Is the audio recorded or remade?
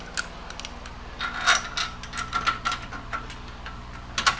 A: recorded